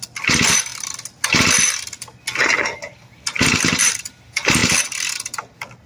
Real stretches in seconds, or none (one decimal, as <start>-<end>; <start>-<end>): 0.0-5.9